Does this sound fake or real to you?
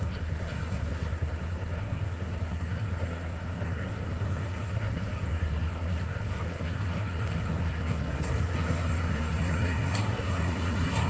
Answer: fake